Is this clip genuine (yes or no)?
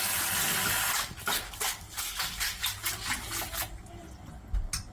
yes